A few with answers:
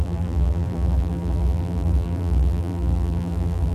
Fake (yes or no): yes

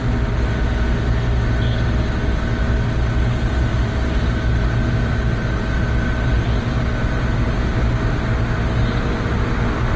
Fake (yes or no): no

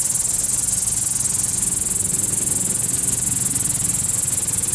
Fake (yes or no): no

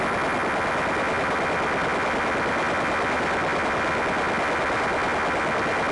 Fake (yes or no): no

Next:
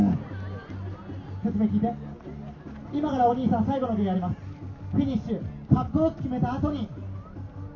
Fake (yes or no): no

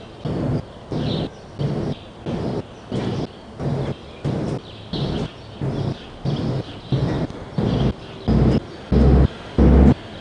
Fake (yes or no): no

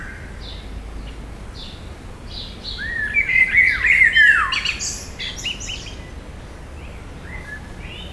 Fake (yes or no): no